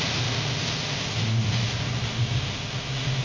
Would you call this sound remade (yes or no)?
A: no